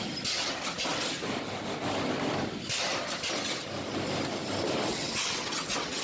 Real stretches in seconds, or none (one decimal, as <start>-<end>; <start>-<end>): 0.0-4.9